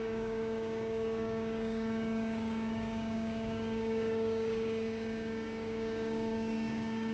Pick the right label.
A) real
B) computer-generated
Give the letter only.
B